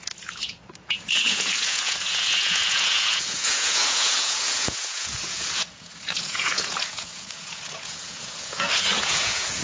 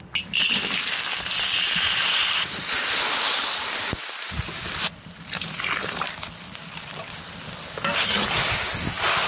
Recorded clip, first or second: second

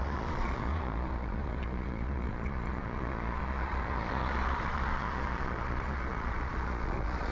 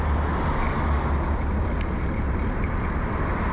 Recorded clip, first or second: second